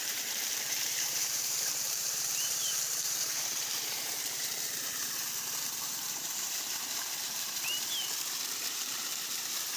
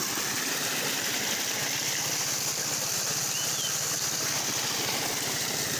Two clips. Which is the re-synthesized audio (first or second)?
first